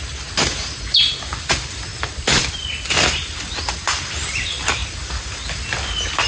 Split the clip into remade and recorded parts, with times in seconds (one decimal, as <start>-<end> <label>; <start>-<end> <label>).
0.0-1.9 recorded; 1.9-3.6 remade; 3.6-6.3 recorded